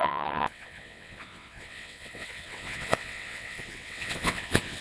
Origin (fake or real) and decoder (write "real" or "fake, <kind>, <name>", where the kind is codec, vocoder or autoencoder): fake, vocoder, WaveNeXt